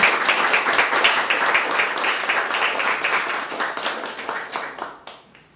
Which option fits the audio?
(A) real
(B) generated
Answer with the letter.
A